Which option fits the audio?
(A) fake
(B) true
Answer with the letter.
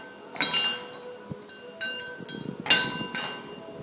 B